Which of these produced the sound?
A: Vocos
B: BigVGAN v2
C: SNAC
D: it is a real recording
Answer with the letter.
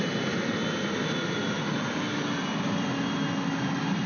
D